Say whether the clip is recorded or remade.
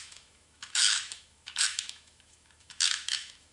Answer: remade